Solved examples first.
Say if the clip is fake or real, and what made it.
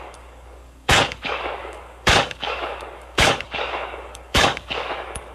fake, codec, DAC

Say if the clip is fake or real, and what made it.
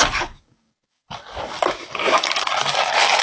fake, codec, DAC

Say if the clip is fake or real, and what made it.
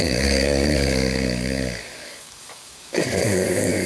fake, codec, DAC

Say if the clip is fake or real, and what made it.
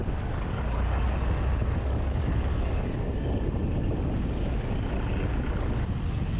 fake, codec, DAC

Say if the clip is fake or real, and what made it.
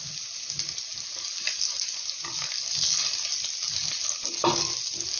real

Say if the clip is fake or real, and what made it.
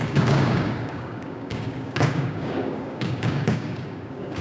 fake, codec, DAC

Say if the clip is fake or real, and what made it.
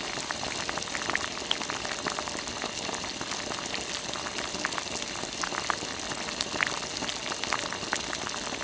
real